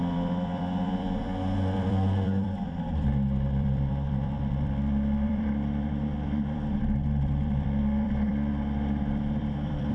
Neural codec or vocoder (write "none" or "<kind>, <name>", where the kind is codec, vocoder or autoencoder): vocoder, BigVGAN v2